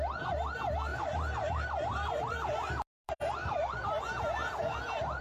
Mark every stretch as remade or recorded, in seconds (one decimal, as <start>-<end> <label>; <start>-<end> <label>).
0.0-0.9 recorded; 0.9-4.0 remade; 4.0-5.2 recorded